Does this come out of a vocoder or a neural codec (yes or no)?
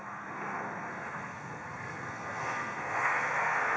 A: yes